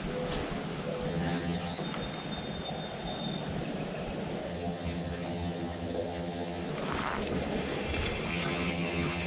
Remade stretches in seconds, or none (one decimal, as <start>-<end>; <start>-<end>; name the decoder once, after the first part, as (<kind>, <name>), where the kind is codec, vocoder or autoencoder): 1.1-1.8 (vocoder, HiFi-GAN); 4.5-6.7; 8.3-9.3